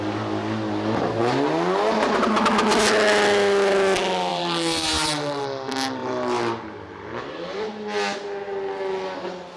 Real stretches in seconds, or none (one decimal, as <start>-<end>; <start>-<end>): 0.0-4.3; 5.4-6.0; 7.6-9.6